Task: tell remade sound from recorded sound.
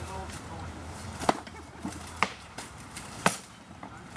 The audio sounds remade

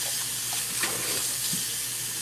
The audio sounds recorded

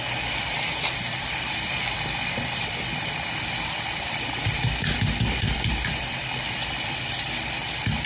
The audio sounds remade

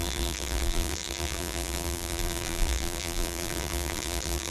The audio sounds remade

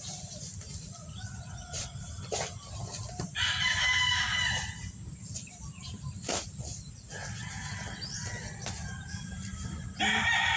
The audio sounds recorded